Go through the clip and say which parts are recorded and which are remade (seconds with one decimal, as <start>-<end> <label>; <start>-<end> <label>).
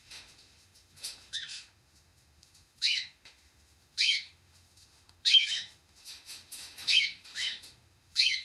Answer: 0.0-8.4 remade